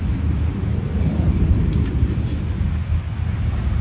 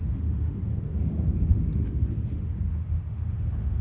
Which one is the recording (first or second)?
first